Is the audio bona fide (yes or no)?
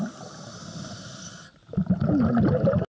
yes